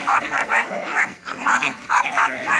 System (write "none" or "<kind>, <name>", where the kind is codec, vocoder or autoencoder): codec, SNAC